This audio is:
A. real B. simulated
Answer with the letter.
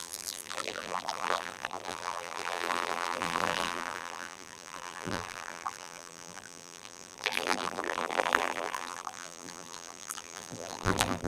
B